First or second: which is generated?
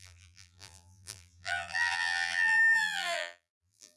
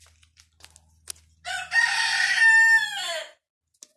first